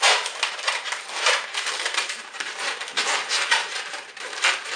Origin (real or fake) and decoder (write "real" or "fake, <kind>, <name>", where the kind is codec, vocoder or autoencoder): fake, vocoder, BigVGAN v2